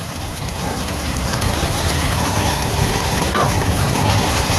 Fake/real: fake